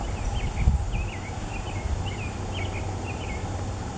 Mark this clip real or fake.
real